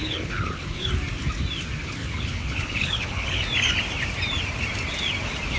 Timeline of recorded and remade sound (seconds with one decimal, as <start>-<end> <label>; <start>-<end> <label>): 0.0-0.9 remade; 0.9-2.0 recorded; 2.0-3.4 remade; 3.4-5.6 recorded